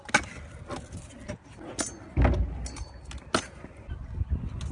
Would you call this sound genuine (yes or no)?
yes